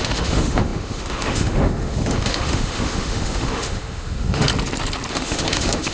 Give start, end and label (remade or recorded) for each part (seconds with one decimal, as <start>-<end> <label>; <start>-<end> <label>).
0.0-4.5 remade; 4.5-5.1 recorded; 5.1-5.9 remade